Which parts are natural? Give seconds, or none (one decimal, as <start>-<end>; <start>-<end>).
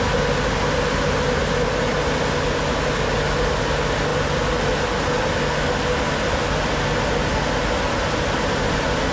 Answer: 0.0-9.1